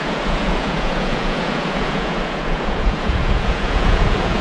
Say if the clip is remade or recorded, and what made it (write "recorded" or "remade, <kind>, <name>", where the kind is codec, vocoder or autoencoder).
remade, vocoder, Vocos